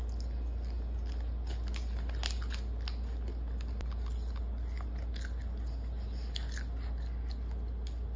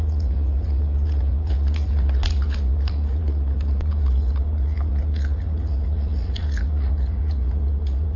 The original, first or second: first